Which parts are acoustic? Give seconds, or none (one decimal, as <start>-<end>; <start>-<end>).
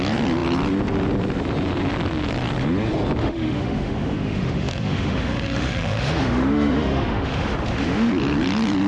0.0-3.2; 8.1-8.9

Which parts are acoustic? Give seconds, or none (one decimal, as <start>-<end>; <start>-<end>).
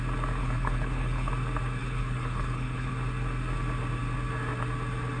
0.0-0.4; 1.3-1.8; 2.9-5.2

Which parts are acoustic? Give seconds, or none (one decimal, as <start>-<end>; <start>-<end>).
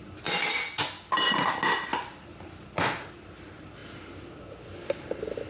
0.0-5.5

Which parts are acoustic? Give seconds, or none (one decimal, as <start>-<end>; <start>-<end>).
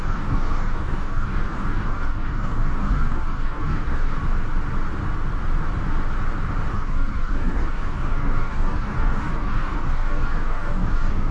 4.2-6.7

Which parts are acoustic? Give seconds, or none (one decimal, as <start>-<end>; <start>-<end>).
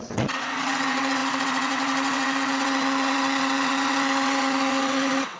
none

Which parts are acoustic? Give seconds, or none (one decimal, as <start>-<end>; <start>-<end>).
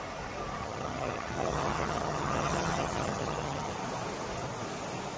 0.0-0.6; 3.7-5.2